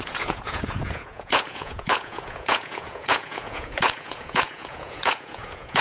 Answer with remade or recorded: remade